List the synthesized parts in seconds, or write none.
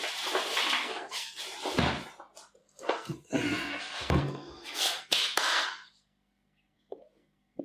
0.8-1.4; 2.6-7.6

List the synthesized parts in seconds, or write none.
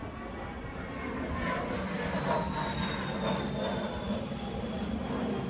none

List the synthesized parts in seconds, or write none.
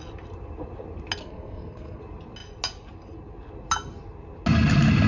1.2-2.0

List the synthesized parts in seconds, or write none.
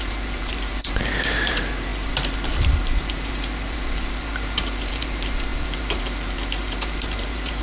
0.0-7.6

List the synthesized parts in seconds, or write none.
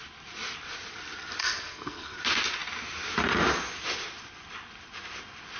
1.4-2.2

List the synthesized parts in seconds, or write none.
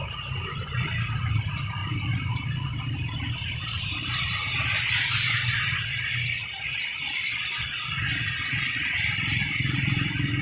0.0-6.4; 7.1-10.4